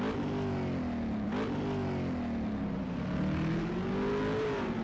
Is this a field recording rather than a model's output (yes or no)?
yes